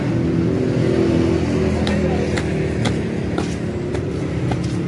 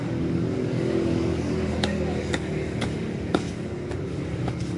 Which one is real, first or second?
first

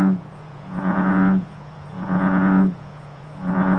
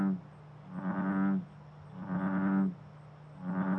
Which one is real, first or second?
second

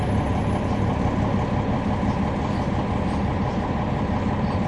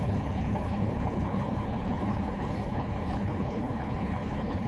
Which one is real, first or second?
first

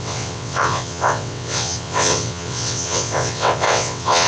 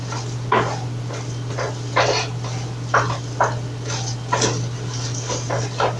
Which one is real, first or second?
second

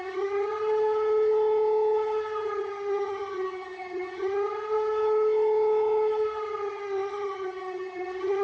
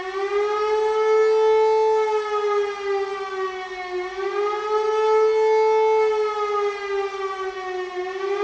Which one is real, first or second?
second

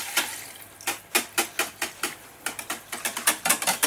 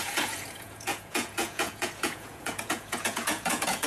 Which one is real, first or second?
first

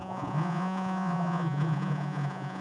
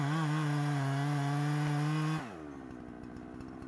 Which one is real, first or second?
second